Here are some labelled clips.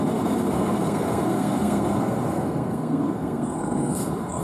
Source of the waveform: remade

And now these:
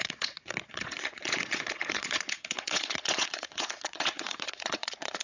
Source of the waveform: remade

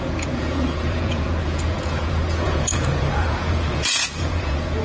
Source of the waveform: remade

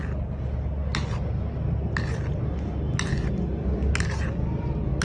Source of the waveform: recorded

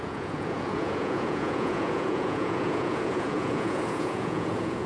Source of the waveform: remade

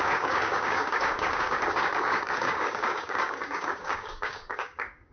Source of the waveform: remade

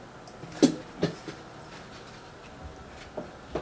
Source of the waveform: recorded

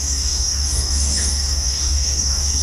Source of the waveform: remade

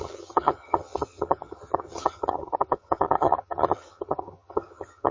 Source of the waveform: remade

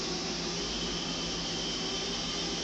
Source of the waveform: recorded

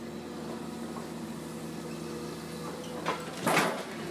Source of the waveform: recorded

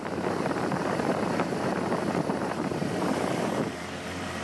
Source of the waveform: remade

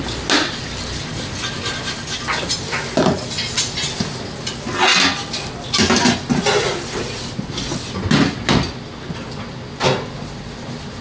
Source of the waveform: recorded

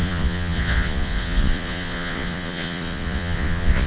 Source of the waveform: remade